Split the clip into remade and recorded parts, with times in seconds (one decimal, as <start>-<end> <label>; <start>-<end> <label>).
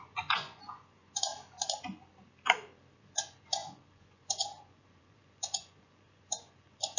0.0-1.3 remade; 1.3-3.0 recorded; 3.0-7.0 remade